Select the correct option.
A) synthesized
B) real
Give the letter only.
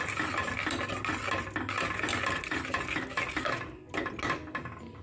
B